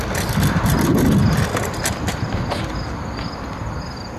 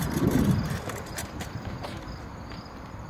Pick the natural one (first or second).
first